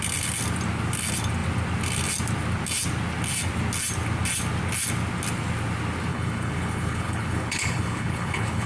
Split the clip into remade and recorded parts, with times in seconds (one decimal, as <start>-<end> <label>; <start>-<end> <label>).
0.0-6.1 recorded; 6.1-8.7 remade

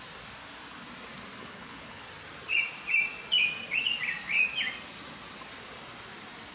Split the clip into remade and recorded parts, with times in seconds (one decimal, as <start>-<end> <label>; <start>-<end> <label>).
0.0-1.4 recorded; 1.4-2.1 remade; 2.1-6.5 recorded

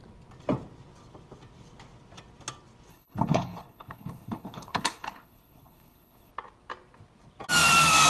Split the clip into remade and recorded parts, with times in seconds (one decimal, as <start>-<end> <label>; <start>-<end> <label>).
0.0-2.9 recorded; 2.9-6.3 remade; 6.3-8.1 recorded

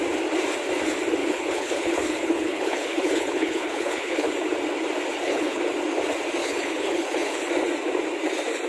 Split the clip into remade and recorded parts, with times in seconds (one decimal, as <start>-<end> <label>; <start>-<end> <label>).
0.0-1.2 recorded; 1.2-4.3 remade; 4.3-5.1 recorded; 5.1-5.6 remade; 5.6-6.4 recorded; 6.4-7.5 remade; 7.5-8.7 recorded

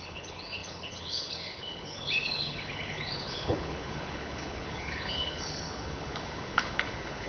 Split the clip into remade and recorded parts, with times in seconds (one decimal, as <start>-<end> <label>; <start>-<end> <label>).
0.0-7.3 remade

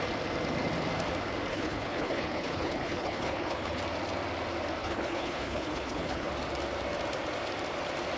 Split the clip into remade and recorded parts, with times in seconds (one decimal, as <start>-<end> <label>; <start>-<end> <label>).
0.0-1.5 recorded; 1.5-3.8 remade; 3.8-4.8 recorded; 4.8-6.3 remade; 6.3-8.2 recorded